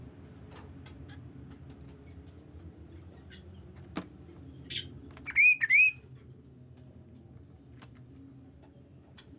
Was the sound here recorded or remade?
recorded